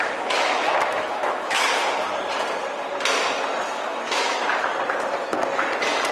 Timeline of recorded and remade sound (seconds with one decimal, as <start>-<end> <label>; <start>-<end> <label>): 0.0-1.8 remade; 1.8-3.7 recorded; 3.7-4.4 remade; 4.4-6.1 recorded